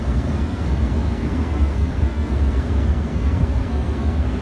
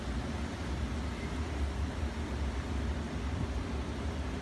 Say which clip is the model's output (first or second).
first